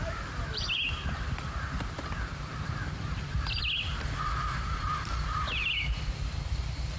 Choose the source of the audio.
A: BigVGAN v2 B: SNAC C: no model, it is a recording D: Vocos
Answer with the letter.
A